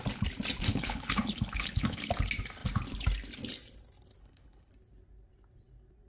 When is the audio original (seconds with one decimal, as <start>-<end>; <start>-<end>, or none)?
0.0-0.7; 2.1-4.2; 4.7-6.1